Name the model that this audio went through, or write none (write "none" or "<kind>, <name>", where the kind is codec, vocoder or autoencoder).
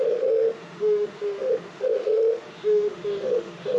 autoencoder, DAC-VAE